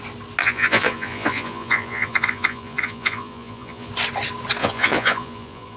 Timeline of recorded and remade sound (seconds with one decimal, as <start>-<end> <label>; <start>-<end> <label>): 0.0-0.4 recorded; 0.4-3.9 remade; 3.9-4.6 recorded; 4.6-5.8 remade